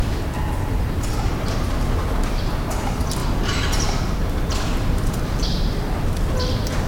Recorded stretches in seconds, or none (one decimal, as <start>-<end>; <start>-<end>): 0.0-6.9